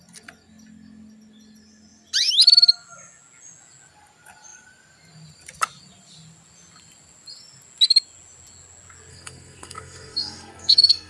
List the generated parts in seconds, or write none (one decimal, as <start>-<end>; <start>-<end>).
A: 9.1-11.1